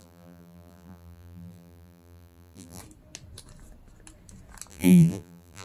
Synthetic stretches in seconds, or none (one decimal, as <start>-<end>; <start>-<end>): 0.0-2.8; 4.7-5.6